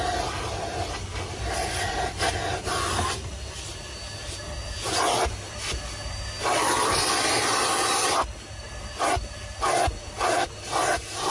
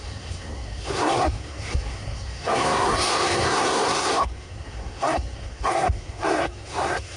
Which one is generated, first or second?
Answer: second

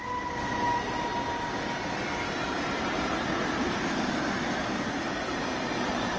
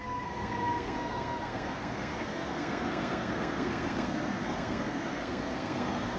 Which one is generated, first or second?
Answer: second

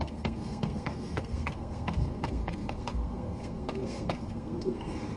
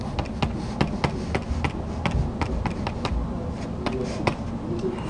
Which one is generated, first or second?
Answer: first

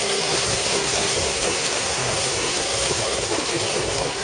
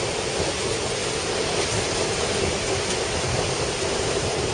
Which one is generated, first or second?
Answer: first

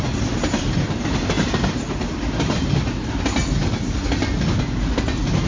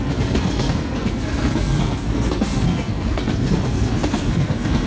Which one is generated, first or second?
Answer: second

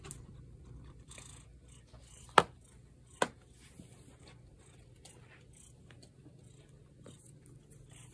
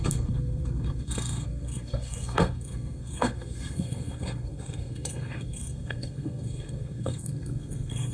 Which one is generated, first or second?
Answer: second